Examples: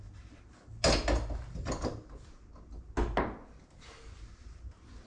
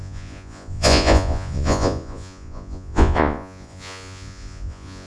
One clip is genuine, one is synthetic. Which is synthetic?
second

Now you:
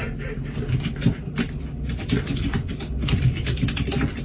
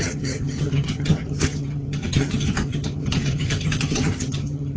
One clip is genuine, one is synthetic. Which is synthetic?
second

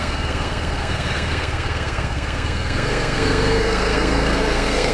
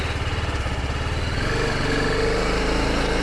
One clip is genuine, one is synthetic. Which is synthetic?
first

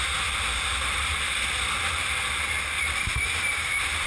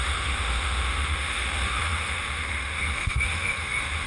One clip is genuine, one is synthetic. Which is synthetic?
second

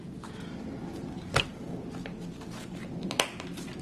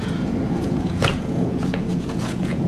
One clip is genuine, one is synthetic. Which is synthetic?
second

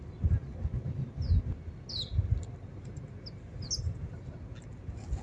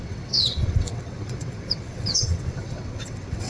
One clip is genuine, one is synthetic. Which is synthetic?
second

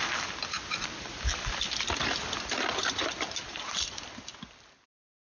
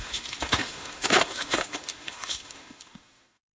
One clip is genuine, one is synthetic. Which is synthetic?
second